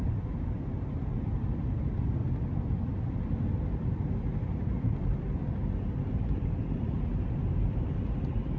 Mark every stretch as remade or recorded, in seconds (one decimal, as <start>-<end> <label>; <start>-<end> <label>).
0.0-2.2 remade; 2.2-6.1 recorded; 6.1-8.6 remade